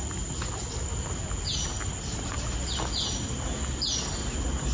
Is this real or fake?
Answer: real